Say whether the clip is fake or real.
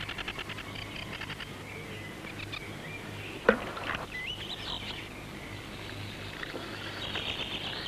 real